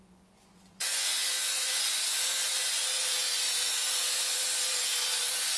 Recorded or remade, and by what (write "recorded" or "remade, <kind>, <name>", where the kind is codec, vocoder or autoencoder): remade, vocoder, Vocos